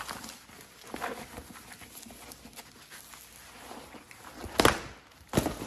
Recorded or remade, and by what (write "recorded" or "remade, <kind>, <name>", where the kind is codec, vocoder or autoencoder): recorded